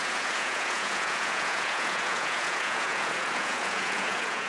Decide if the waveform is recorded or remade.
remade